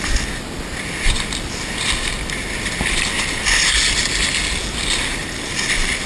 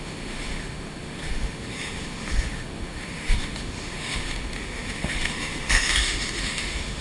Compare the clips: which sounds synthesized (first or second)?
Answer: second